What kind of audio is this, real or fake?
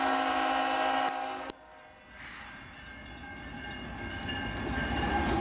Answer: real